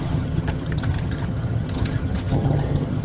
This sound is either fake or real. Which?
fake